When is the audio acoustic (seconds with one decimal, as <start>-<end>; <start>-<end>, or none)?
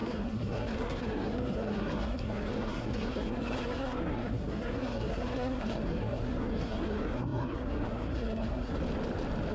8.8-9.5